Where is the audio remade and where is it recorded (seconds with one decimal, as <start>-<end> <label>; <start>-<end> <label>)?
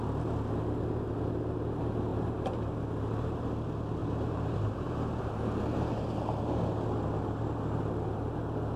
0.0-2.1 recorded; 2.1-3.5 remade; 3.5-4.0 recorded; 4.0-5.6 remade; 5.6-8.8 recorded